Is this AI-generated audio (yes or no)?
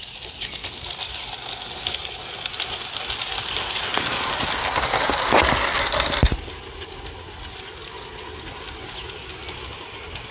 no